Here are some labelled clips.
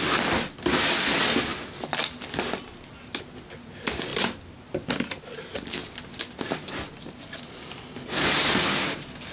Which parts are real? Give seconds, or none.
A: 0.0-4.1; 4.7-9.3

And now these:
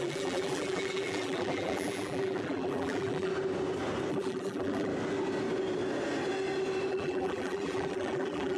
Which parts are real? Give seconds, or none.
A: 3.3-4.1; 4.9-6.9